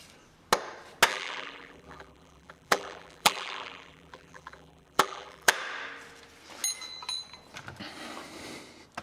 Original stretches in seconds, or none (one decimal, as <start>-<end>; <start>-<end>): 0.0-1.1; 5.5-9.0